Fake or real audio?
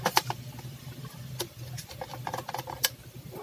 real